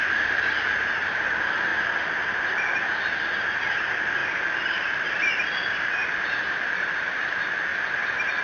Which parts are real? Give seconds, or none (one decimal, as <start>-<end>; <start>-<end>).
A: 1.7-3.4; 4.2-4.7; 6.0-6.5; 7.7-8.4